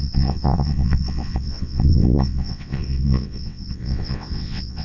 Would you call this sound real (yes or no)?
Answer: no